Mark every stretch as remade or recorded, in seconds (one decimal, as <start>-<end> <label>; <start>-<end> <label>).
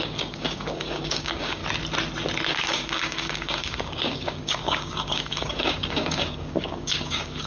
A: 0.0-1.6 remade; 1.6-2.5 recorded; 2.5-7.5 remade